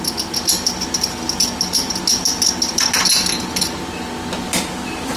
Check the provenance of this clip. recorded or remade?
recorded